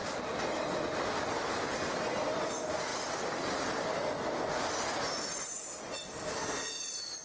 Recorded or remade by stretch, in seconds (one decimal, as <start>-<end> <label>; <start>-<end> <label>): 0.0-7.2 recorded